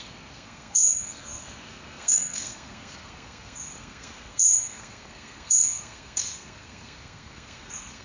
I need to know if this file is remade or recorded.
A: remade